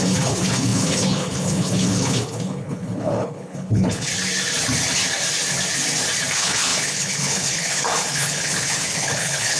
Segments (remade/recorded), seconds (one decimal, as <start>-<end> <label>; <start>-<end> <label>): 0.0-4.1 remade; 4.1-6.3 recorded; 6.3-9.6 remade